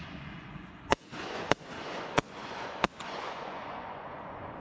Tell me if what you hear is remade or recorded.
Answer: remade